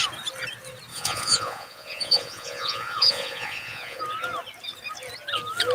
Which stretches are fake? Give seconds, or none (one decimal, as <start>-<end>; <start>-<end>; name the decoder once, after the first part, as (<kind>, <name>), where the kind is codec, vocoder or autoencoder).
0.9-4.0 (vocoder, Vocos)